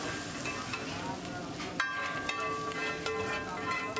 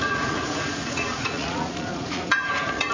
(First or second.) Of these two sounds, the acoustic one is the first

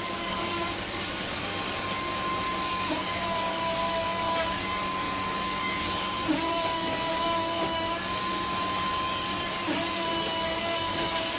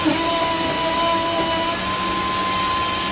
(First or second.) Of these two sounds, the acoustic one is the second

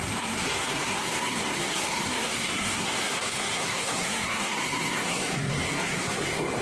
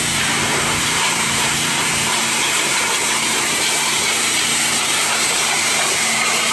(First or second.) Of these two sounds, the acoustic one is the second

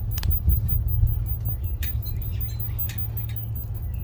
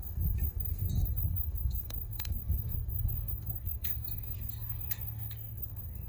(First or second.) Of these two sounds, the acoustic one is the first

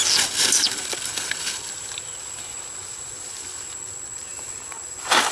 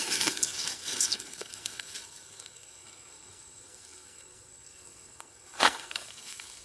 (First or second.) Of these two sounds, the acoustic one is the first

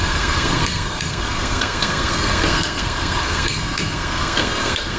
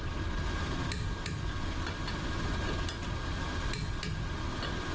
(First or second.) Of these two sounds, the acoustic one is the second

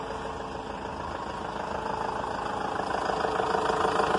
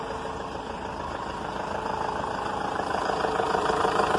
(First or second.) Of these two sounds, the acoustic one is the first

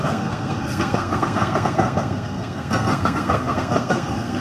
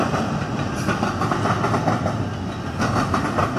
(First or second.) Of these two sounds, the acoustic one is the second